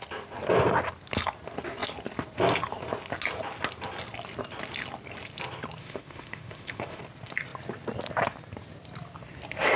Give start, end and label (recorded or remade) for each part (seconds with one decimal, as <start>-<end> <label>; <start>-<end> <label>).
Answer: 0.0-5.8 recorded; 5.8-7.0 remade; 7.0-9.8 recorded